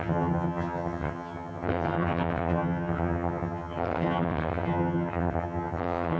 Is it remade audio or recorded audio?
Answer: remade